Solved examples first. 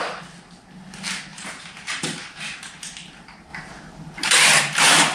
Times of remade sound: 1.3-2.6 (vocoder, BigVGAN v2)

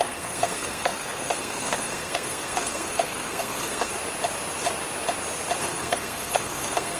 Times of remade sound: 0.0-3.9 (codec, SNAC); 5.6-7.0

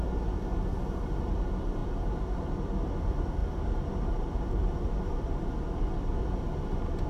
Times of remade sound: none

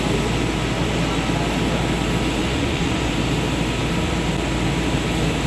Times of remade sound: 2.4-3.1 (vocoder, Vocos)

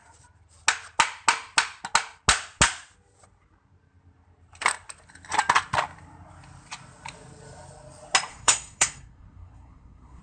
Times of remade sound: 8.3-10.2 (codec, SNAC)